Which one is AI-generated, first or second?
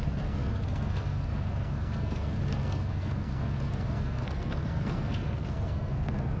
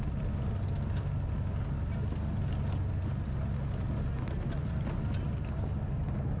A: first